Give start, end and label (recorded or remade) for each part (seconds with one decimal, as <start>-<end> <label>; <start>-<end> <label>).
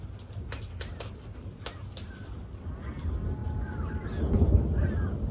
0.0-5.3 recorded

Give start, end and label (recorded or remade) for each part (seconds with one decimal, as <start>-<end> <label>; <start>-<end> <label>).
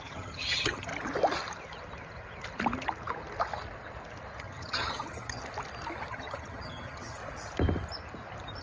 0.0-0.9 remade; 0.9-4.4 recorded; 4.4-5.4 remade; 5.4-6.1 recorded; 6.1-7.2 remade; 7.2-8.6 recorded